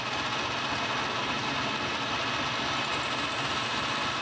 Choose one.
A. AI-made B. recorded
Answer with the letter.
B